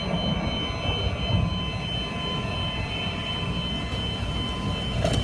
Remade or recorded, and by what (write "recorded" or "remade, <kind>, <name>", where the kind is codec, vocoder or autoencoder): recorded